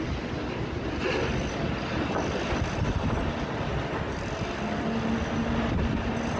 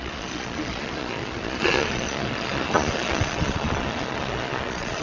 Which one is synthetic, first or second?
second